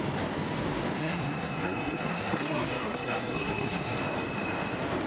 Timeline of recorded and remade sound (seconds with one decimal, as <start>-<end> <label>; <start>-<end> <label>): 0.0-1.0 recorded; 1.0-4.0 remade; 4.0-5.1 recorded